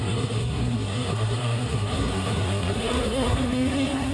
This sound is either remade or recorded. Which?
remade